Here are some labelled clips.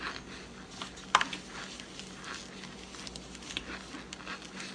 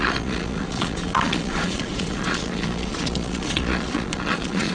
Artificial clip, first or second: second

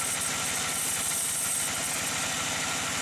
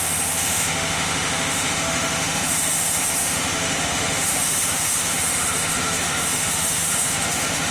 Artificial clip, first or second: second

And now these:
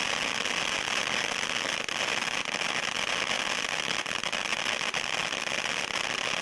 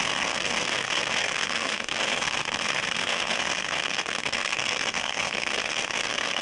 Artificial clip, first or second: second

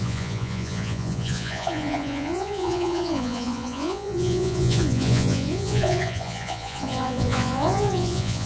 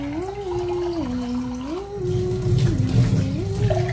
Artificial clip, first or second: first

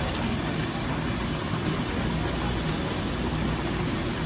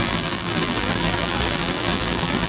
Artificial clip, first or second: second